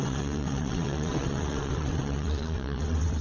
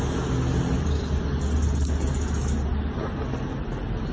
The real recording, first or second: second